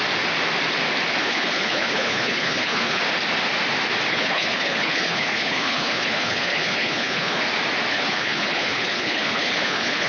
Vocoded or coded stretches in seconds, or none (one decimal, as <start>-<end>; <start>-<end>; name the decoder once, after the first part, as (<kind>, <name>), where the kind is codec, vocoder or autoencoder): 1.2-3.0 (codec, HILCodec); 4.1-7.4; 7.9-10.1

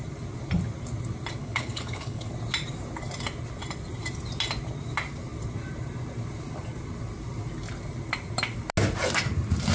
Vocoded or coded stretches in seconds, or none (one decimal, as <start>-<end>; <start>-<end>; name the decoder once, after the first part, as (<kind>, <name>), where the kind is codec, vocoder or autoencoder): 1.4-2.3 (codec, HILCodec)